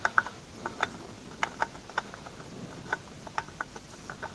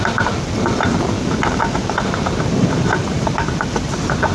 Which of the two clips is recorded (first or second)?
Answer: first